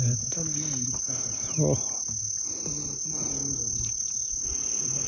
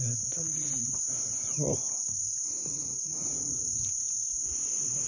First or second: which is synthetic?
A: second